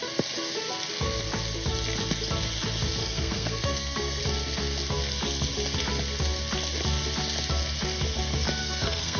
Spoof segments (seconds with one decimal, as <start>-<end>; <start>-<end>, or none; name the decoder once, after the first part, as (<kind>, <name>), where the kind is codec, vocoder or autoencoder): 3.0-4.2 (codec, SNAC); 8.6-9.2